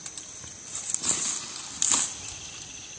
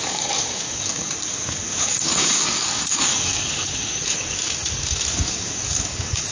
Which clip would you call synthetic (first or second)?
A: second